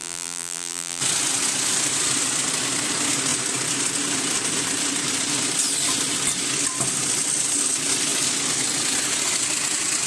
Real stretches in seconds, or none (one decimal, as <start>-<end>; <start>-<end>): 1.0-10.1